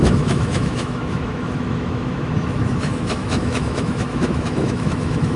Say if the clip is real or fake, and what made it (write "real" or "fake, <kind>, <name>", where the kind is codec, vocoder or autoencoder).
fake, autoencoder, DAC-VAE